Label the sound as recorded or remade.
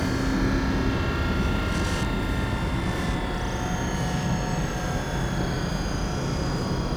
recorded